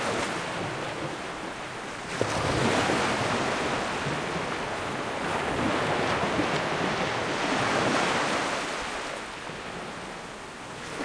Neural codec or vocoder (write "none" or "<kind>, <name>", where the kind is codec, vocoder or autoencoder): none